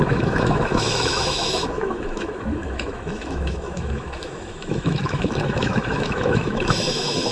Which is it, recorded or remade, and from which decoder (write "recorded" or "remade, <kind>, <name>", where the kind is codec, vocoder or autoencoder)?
remade, autoencoder, DAC-VAE